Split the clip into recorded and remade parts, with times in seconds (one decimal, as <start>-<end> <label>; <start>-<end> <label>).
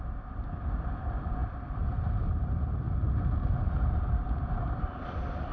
0.0-5.5 recorded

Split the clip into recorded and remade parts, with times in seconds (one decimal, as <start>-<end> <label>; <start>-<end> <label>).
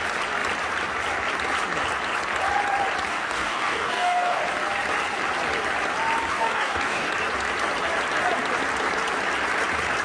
0.0-3.1 recorded; 3.1-4.4 remade; 4.4-6.3 recorded; 6.3-7.1 remade; 7.1-10.0 recorded